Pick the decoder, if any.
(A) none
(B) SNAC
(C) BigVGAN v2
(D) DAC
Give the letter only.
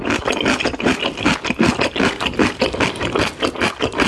A